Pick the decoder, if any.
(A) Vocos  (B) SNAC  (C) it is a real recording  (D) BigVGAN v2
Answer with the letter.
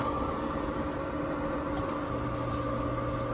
C